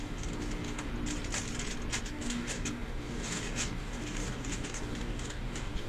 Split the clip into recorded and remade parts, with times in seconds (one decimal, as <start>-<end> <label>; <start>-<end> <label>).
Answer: 0.0-0.9 remade; 0.9-2.0 recorded; 2.0-5.9 remade